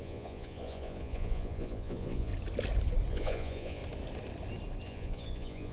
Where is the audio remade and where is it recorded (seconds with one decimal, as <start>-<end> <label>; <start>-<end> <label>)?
0.0-2.3 remade; 2.3-3.1 recorded; 3.1-3.8 remade; 3.8-4.8 recorded; 4.8-5.7 remade